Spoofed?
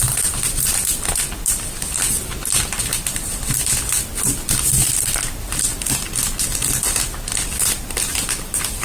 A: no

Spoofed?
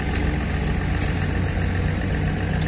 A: no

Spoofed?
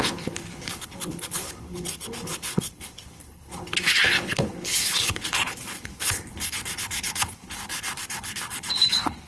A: yes